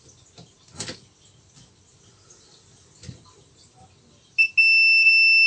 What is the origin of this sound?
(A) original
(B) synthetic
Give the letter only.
A